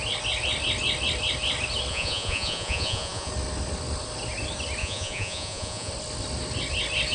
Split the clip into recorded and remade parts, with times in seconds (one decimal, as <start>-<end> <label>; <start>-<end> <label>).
0.0-1.9 recorded; 1.9-3.3 remade; 3.3-4.8 recorded; 4.8-5.9 remade; 5.9-7.1 recorded